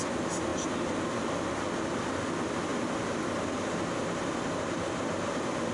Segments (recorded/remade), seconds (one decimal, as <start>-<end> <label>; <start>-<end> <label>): 0.0-5.7 recorded